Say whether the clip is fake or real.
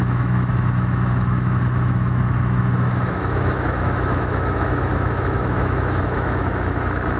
fake